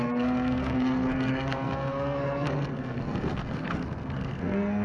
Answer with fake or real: fake